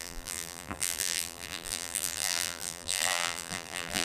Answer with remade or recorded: remade